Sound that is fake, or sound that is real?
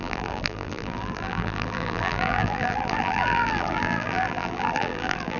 fake